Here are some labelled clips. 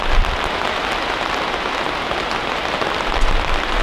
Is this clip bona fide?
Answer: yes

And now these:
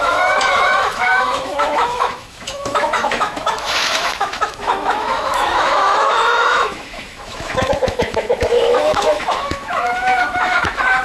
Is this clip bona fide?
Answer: no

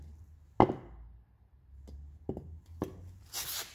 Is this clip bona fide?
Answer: yes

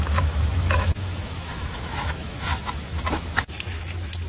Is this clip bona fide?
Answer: no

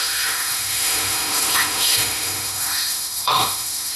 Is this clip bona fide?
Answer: no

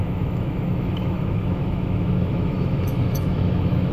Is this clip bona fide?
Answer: no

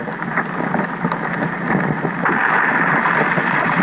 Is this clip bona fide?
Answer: yes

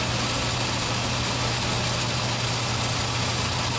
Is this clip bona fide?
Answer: yes